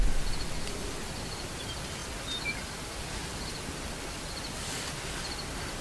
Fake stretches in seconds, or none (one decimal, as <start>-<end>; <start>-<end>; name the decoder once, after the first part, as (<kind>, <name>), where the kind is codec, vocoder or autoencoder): none